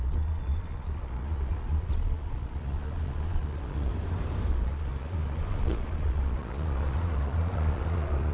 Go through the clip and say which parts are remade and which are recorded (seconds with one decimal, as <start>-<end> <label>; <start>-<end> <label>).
0.0-3.9 remade; 3.9-4.5 recorded; 4.5-8.3 remade